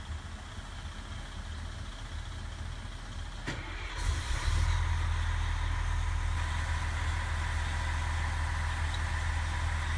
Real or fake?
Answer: real